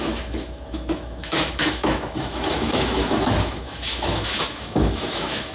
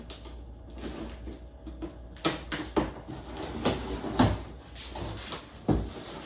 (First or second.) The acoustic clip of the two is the second